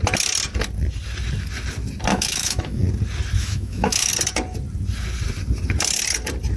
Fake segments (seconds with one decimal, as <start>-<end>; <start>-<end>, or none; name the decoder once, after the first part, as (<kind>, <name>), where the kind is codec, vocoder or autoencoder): 2.1-2.8 (autoencoder, DAC-VAE); 3.4-4.1